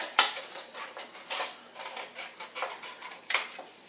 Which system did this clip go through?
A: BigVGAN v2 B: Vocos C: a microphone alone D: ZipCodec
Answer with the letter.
A